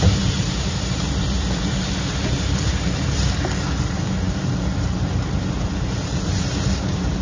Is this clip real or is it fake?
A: fake